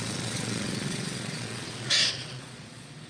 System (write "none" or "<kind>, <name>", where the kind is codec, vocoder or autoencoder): vocoder, Vocos